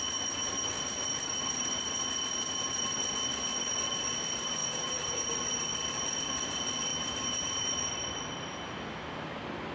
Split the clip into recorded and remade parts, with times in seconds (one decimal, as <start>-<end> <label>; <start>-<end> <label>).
0.0-4.6 recorded; 4.6-5.3 remade; 5.3-6.9 recorded; 6.9-7.7 remade; 7.7-9.7 recorded